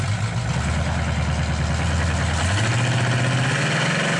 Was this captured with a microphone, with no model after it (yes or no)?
yes